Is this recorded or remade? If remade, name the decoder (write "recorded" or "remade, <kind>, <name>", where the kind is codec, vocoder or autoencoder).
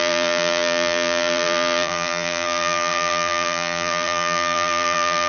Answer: remade, vocoder, BigVGAN v2